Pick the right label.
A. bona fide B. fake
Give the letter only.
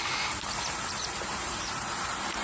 B